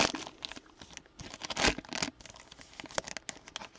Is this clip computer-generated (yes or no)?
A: no